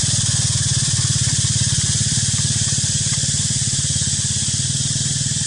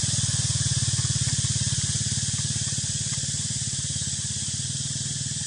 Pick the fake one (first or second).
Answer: first